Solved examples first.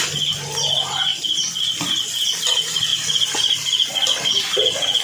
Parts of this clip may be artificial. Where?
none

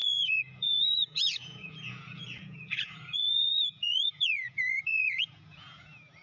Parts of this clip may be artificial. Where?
0.0-6.2